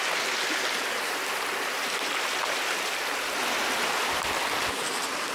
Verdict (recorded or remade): recorded